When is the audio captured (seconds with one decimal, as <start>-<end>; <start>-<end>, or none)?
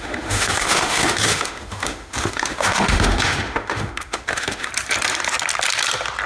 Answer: 4.7-6.3